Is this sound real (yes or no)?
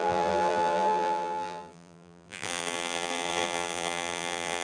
no